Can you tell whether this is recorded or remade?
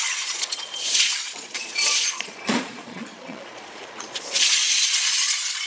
remade